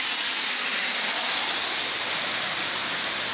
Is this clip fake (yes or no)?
no